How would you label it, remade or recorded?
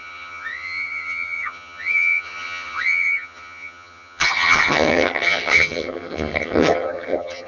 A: remade